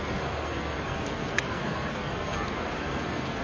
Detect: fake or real fake